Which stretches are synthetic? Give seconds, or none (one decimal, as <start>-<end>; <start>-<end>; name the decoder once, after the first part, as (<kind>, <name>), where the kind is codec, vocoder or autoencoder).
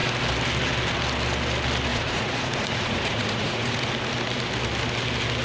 1.9-3.9 (vocoder, Vocos)